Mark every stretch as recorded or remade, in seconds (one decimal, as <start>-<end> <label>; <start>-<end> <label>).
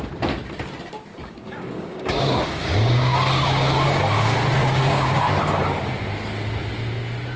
0.0-1.1 recorded; 1.1-4.0 remade; 4.0-4.6 recorded; 4.6-5.2 remade; 5.2-7.4 recorded